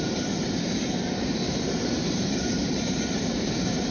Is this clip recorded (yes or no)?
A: no